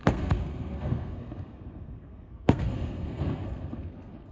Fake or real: fake